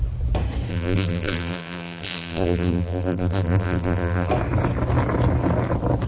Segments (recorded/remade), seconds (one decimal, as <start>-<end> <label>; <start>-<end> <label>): 0.0-0.7 recorded; 0.7-4.3 remade; 4.3-6.1 recorded